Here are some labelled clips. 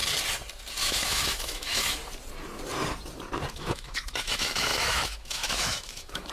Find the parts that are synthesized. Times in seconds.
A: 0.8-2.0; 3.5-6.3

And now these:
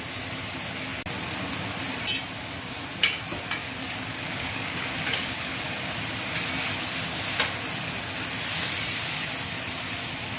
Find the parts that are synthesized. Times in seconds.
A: 3.6-5.5

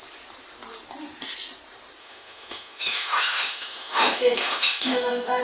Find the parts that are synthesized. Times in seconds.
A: 2.0-5.4

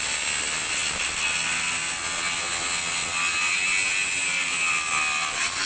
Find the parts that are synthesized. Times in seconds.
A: none

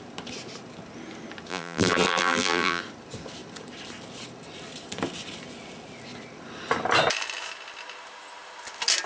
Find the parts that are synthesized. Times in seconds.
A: 1.5-2.8

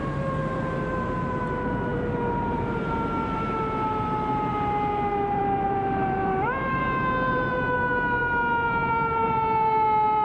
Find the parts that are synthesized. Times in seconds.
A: 0.0-8.2; 8.7-10.2

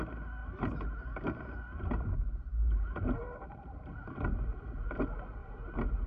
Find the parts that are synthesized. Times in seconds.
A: 0.4-4.1; 5.4-6.1

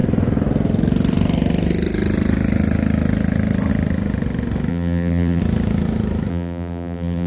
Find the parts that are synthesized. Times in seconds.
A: 4.7-5.4; 6.3-7.3